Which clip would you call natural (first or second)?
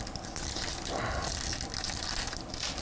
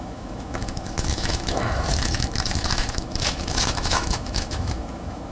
first